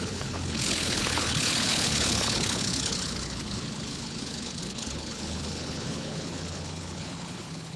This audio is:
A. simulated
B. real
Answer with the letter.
A